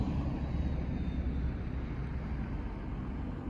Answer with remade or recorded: recorded